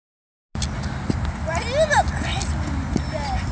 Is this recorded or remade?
recorded